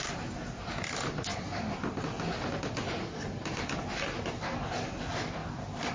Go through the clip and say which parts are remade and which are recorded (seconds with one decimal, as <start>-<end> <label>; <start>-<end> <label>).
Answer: 0.0-1.3 recorded; 1.3-2.4 remade; 2.4-5.4 recorded; 5.4-5.9 remade